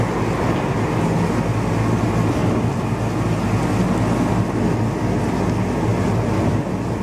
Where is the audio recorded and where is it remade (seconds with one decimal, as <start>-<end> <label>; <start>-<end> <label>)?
0.0-7.0 recorded